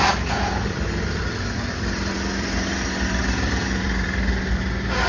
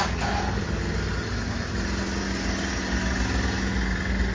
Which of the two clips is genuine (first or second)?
second